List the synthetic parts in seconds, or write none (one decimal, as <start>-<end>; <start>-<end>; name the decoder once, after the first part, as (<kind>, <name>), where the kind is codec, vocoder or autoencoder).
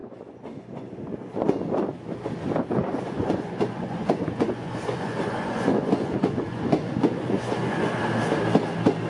0.0-1.6 (vocoder, Vocos); 2.8-8.0